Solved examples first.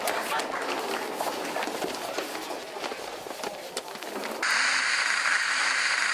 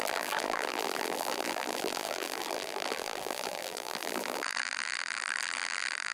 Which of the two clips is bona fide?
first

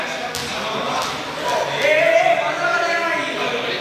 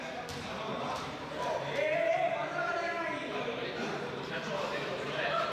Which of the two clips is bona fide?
first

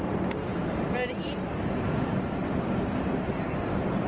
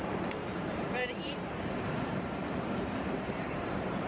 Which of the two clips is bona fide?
first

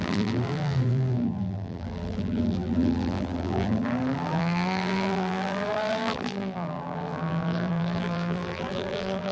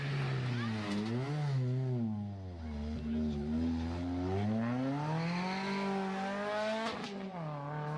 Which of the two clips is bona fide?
second